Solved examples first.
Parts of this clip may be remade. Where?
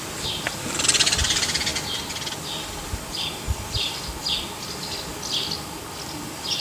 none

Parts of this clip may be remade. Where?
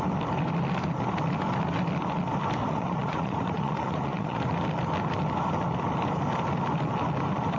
2.6-4.4 (vocoder, Vocos)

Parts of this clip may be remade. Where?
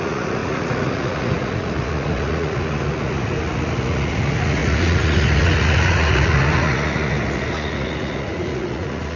0.0-9.2 (vocoder, Vocos)